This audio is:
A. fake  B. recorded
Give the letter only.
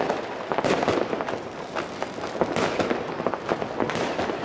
B